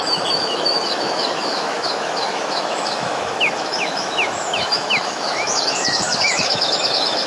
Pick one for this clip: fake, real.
fake